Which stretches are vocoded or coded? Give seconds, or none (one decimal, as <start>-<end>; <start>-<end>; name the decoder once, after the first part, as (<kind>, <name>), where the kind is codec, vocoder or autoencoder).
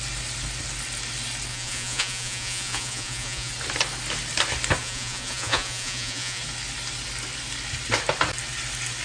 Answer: 1.5-3.5 (vocoder, Vocos); 4.8-6.4